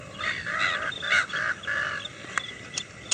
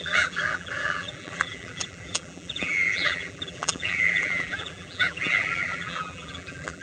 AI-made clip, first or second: second